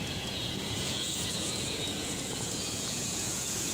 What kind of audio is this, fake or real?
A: fake